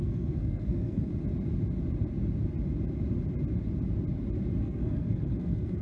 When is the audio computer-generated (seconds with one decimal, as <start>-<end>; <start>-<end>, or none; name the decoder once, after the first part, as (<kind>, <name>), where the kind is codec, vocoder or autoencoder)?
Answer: 0.0-1.1 (codec, SNAC); 4.6-5.8